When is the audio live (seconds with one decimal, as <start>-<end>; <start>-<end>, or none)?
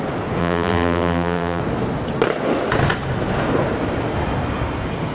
0.0-0.4; 1.6-5.1